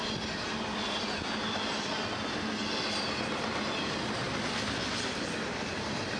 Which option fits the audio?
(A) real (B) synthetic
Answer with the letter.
A